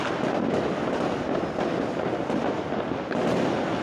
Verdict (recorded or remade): recorded